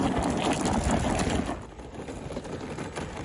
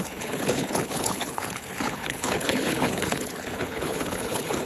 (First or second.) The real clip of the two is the first